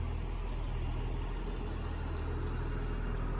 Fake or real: real